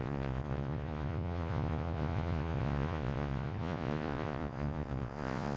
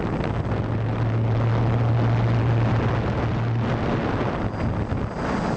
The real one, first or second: second